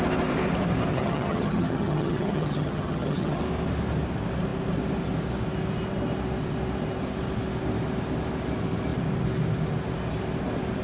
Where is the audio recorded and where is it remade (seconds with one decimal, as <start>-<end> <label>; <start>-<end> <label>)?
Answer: 0.0-0.9 recorded; 0.9-3.4 remade; 3.4-10.8 recorded